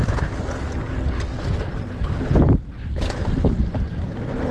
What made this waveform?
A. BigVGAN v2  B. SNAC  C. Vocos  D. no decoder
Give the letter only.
D